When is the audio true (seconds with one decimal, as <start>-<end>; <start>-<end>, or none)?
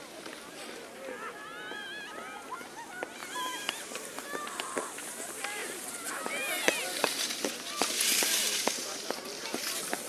0.0-3.2; 4.2-5.6; 6.3-10.1